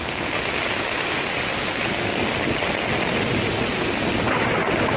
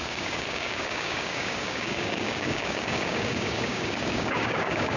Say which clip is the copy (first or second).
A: second